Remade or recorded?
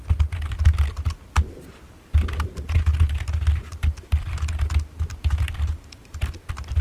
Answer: recorded